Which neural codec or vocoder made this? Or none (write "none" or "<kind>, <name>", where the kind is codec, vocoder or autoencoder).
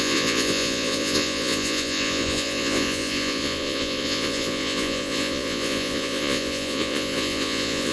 vocoder, Vocos